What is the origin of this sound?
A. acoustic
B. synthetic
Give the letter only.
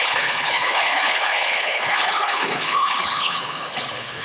B